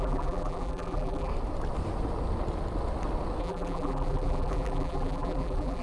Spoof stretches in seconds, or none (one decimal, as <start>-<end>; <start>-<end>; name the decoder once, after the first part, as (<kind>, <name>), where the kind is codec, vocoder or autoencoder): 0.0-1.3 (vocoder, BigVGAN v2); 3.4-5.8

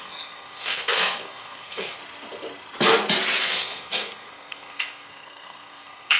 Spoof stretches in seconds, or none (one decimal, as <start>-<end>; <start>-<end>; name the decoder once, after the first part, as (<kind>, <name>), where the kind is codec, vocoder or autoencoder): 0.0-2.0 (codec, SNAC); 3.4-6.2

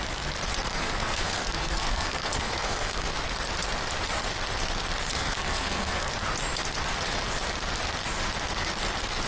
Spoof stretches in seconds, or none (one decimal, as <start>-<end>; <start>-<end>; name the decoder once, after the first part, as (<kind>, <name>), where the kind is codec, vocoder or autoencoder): 0.7-3.1 (codec, SNAC); 5.1-6.1